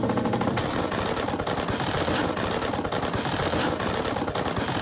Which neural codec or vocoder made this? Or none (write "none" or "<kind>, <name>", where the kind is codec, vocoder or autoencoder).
none